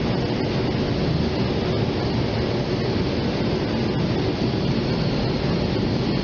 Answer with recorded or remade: recorded